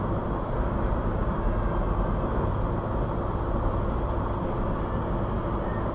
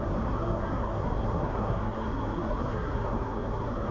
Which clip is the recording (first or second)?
first